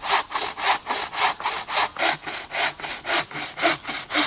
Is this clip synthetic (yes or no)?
no